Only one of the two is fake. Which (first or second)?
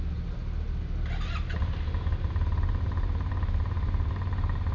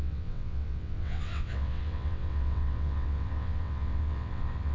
second